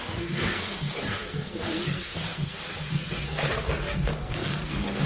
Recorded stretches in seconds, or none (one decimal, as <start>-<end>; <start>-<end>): none